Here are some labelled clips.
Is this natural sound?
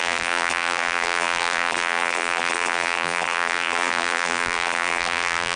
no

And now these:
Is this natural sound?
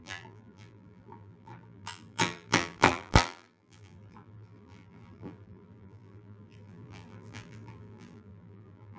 no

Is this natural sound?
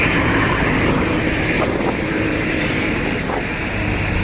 no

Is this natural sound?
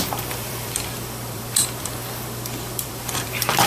no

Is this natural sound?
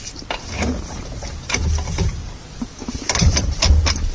yes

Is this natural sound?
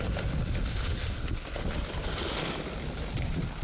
yes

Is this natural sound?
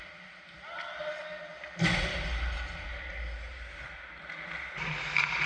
yes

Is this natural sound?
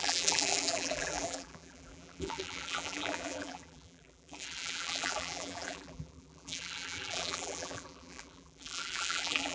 no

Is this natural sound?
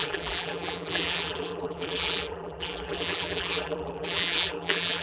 no